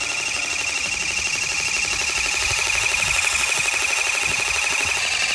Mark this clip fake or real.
real